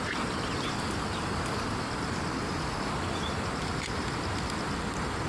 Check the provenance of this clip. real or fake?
real